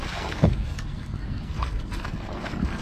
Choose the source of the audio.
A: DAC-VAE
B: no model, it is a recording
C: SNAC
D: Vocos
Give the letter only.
C